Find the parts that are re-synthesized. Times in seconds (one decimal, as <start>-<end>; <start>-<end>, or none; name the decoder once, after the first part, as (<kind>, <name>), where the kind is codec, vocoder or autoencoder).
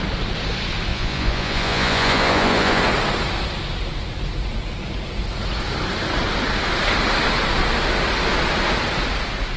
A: 0.9-2.8 (vocoder, Vocos)